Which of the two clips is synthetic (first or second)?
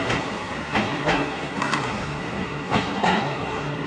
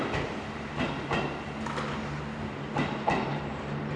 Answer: first